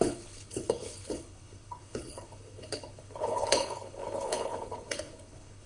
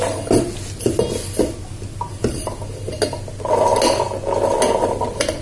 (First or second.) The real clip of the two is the second